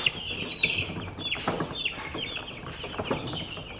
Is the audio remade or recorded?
recorded